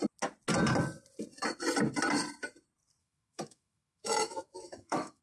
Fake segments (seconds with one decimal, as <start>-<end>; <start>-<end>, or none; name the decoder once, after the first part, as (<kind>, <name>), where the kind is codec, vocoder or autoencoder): 3.0-5.2 (autoencoder, DAC-VAE)